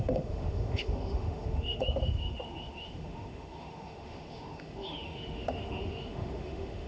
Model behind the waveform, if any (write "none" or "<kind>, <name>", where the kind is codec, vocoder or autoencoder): autoencoder, DAC-VAE